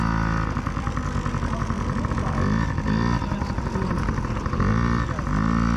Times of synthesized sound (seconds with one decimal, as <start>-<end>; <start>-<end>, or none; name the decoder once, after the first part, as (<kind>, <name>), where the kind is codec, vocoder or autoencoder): none